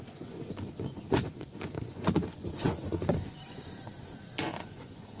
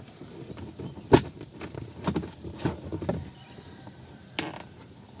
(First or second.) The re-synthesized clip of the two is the first